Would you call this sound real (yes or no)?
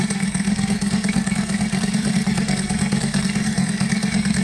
no